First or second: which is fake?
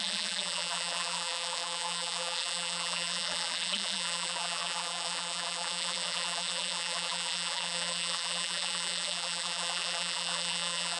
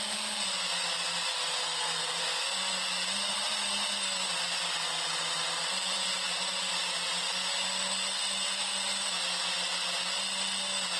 first